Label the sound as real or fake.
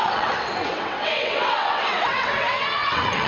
fake